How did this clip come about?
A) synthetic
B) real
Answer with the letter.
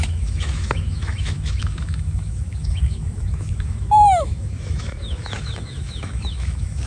A